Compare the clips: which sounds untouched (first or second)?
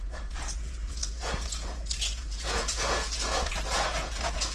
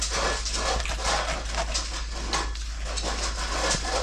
second